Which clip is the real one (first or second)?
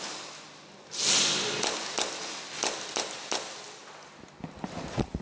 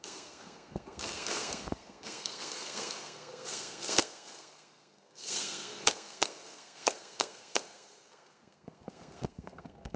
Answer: first